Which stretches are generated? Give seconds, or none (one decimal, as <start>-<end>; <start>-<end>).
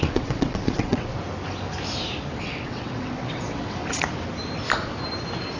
0.0-1.1; 2.4-3.8